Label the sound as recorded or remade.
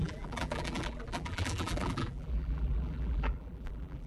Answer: remade